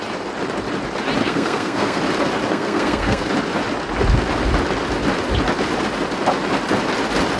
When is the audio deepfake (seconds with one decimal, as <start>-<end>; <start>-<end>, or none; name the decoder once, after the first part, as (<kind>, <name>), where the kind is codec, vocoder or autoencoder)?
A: 1.2-2.0 (codec, SNAC); 2.5-3.3